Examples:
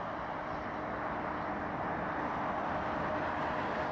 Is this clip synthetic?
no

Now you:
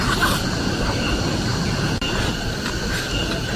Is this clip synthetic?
no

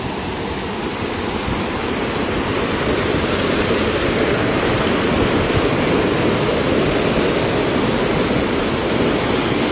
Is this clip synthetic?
no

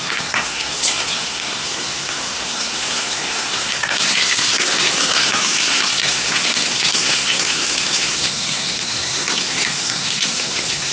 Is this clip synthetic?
yes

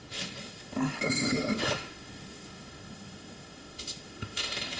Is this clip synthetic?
yes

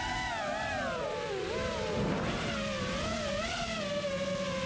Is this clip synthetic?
no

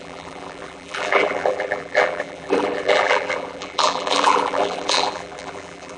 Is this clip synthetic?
yes